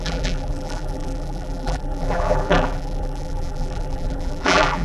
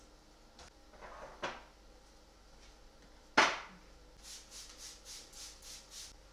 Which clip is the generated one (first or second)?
first